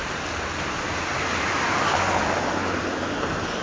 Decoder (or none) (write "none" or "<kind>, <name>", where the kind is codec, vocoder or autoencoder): none